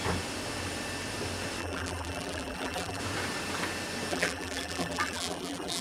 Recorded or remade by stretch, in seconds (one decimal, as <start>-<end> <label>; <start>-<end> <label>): 0.0-1.6 recorded; 1.6-3.0 remade; 3.0-4.1 recorded; 4.1-5.8 remade